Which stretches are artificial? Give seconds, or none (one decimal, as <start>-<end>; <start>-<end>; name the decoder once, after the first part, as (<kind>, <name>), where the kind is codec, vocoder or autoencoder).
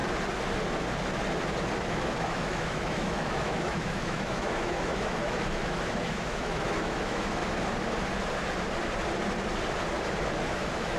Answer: 1.9-7.4 (autoencoder, DAC-VAE); 10.5-11.0